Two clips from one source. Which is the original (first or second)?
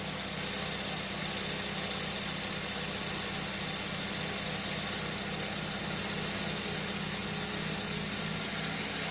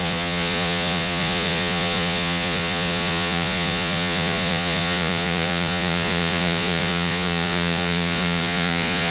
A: first